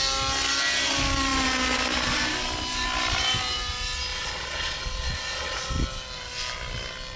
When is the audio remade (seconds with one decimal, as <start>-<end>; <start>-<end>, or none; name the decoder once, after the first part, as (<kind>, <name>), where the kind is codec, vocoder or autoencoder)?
4.1-5.7 (vocoder, Vocos)